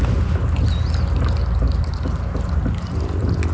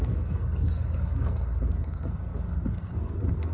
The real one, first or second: first